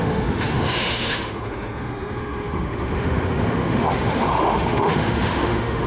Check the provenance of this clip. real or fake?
fake